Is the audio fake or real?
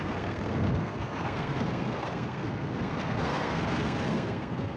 fake